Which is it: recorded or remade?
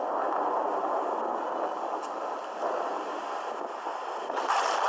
recorded